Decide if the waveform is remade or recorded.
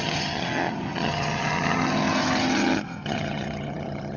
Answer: remade